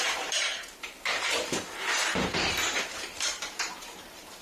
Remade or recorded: remade